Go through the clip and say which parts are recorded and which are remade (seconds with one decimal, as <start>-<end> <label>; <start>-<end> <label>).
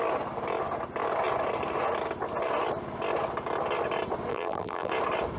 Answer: 0.0-4.3 recorded; 4.3-4.9 remade; 4.9-5.4 recorded